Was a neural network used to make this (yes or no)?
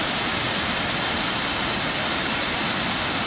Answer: no